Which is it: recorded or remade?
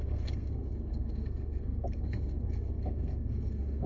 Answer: remade